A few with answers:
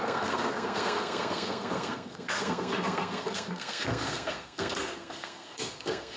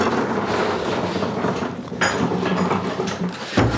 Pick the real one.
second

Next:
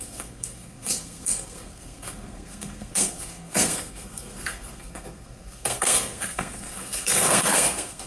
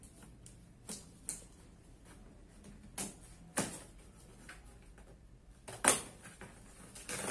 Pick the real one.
second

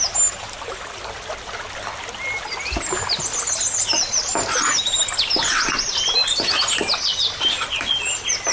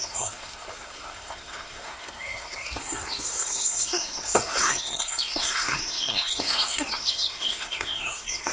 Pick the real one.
first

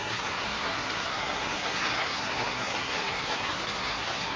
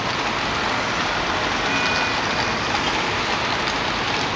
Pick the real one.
second